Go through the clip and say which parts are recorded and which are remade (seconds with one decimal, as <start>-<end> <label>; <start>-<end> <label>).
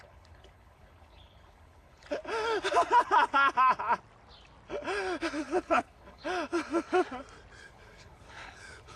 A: 0.0-2.2 remade; 2.2-5.4 recorded; 5.4-6.2 remade; 6.2-7.6 recorded; 7.6-9.0 remade